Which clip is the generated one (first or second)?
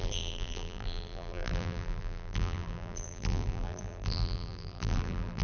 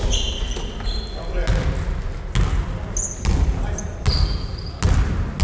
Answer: first